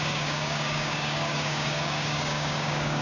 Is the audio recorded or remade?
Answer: remade